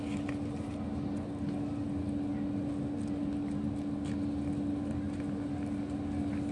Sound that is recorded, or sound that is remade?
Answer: recorded